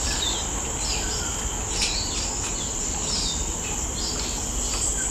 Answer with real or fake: real